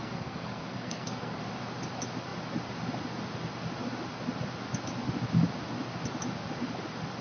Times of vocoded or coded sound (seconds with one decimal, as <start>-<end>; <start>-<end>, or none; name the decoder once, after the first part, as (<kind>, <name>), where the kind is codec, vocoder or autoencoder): 0.0-1.4 (codec, SNAC)